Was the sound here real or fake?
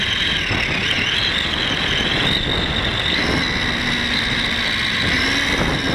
real